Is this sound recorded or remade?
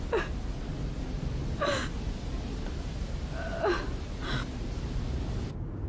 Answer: recorded